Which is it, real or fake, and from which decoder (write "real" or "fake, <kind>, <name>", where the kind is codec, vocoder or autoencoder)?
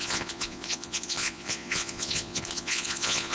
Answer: fake, vocoder, Vocos